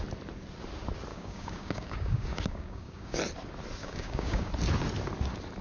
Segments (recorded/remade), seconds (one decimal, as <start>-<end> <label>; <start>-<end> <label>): 0.0-1.1 recorded; 1.1-3.2 remade; 3.2-3.8 recorded; 3.8-4.5 remade; 4.5-5.6 recorded